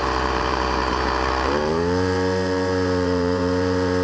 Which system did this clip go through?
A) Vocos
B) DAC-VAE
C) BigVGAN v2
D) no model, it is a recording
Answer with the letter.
C